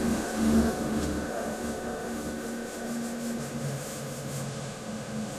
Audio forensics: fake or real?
fake